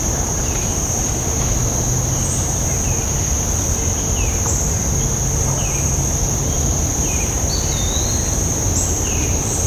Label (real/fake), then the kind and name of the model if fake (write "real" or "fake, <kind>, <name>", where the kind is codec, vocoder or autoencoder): real